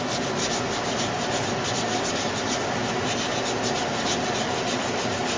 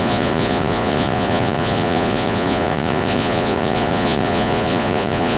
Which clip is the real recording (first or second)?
first